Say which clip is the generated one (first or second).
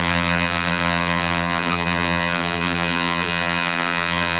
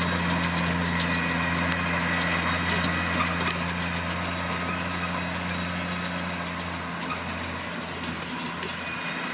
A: first